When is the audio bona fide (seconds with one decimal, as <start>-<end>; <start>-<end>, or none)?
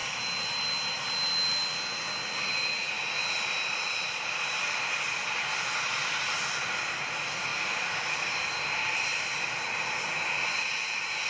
0.0-7.5; 8.1-11.3